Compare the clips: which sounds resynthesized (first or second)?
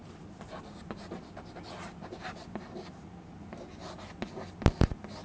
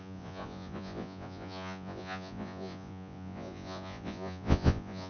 second